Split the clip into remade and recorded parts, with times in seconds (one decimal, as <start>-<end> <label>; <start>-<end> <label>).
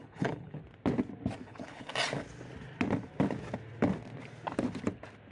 0.0-0.6 remade; 0.6-1.4 recorded; 1.4-1.9 remade; 1.9-5.3 recorded